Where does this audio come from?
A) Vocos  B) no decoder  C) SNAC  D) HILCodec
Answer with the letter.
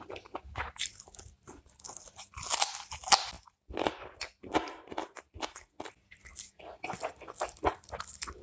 B